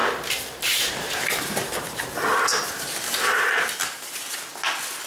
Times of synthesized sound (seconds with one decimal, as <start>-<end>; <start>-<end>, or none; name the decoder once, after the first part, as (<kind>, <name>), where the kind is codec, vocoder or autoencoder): 0.0-0.9 (vocoder, BigVGAN v2)